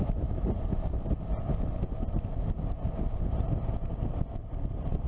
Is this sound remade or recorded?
recorded